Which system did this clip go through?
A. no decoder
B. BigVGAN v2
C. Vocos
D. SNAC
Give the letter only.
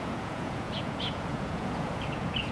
C